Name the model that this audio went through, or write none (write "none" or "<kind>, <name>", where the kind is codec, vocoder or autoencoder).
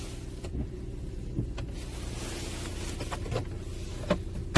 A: none